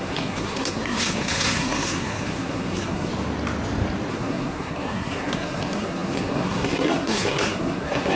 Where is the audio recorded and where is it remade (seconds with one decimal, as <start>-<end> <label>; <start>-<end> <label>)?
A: 0.0-3.1 remade; 3.1-4.1 recorded; 4.1-8.2 remade